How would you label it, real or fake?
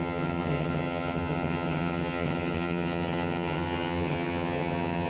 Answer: fake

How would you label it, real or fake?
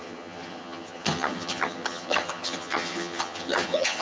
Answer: fake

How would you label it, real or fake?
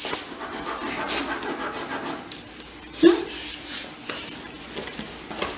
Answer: real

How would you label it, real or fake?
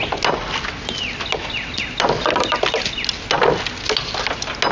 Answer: real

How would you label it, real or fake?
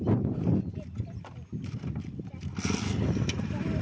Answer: real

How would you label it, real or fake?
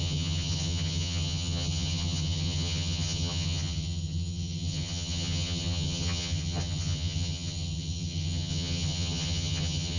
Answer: fake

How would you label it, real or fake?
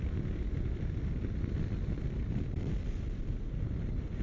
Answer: real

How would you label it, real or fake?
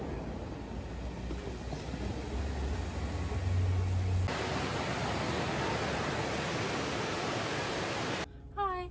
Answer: real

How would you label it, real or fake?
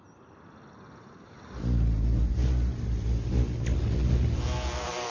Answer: real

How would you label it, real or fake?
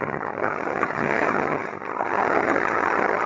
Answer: fake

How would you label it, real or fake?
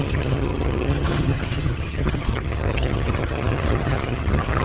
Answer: fake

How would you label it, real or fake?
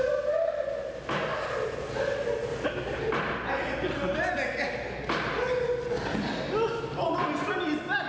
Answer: real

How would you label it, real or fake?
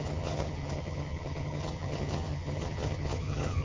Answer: fake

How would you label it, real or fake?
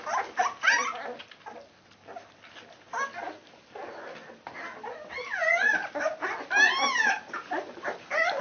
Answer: real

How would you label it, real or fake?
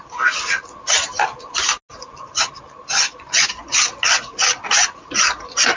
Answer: real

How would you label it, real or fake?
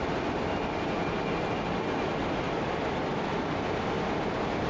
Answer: real